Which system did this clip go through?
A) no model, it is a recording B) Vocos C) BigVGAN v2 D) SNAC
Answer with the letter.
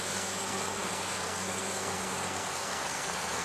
D